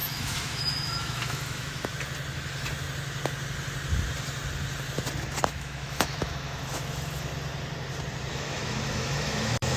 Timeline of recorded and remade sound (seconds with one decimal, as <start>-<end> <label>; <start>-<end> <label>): 0.0-1.9 remade; 1.9-5.5 recorded; 5.5-7.3 remade; 7.3-8.3 recorded; 8.3-9.8 remade